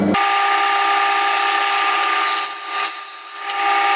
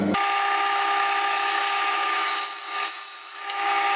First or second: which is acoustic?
first